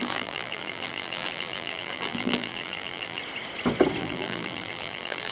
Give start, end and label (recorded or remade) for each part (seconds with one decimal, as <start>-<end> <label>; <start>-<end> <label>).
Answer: 0.0-3.2 remade; 3.2-4.0 recorded; 4.0-5.3 remade